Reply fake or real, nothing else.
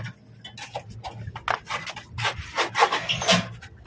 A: real